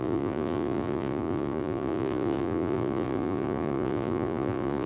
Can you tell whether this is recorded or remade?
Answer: remade